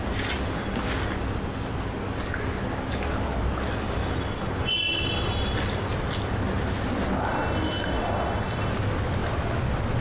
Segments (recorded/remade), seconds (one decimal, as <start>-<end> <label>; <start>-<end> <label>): 0.0-7.3 recorded; 7.3-8.7 remade; 8.7-10.0 recorded